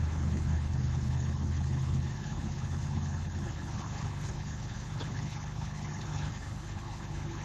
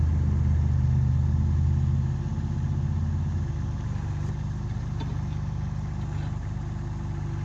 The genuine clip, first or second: second